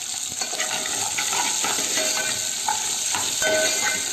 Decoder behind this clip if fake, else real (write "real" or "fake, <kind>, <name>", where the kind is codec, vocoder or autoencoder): real